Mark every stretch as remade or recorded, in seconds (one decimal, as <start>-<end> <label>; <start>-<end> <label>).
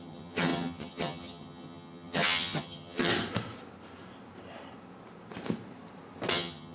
0.0-3.1 remade; 3.1-6.3 recorded; 6.3-6.7 remade